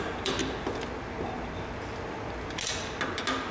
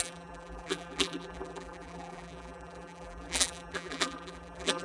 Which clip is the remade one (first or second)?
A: second